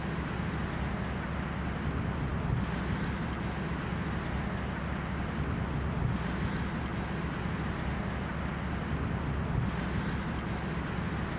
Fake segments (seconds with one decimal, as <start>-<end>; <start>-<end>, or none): none